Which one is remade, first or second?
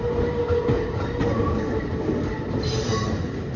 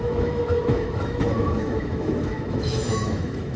second